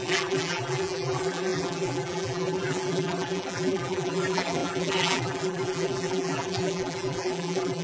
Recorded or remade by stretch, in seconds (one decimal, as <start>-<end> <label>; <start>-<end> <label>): 0.0-7.8 remade